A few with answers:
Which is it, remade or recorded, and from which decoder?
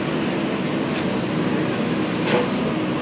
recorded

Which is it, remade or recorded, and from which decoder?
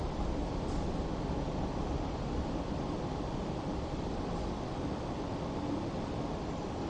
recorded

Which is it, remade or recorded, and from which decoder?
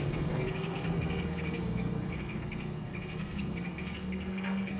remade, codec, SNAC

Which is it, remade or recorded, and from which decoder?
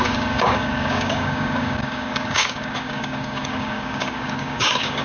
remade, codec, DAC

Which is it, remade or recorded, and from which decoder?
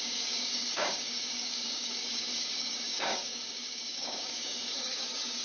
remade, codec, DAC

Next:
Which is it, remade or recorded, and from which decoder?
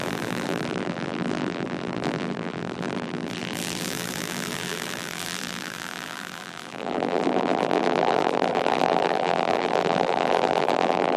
remade, vocoder, BigVGAN v2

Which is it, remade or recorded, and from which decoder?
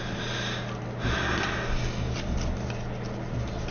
recorded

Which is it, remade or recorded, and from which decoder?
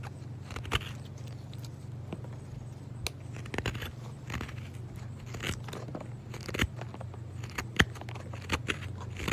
recorded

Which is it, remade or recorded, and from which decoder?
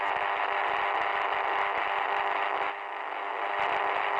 recorded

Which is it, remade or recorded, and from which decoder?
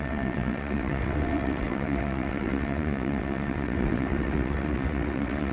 remade, vocoder, WaveNeXt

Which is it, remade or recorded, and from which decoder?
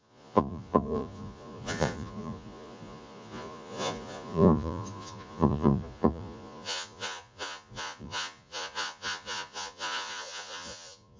remade, vocoder, Vocos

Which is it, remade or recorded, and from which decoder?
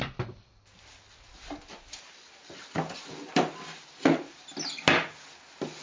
recorded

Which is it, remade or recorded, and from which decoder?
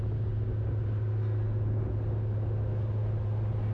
recorded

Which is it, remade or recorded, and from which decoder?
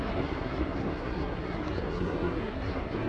remade, codec, SNAC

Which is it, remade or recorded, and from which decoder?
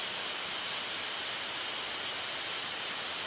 recorded